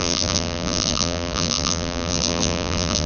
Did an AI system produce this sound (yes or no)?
yes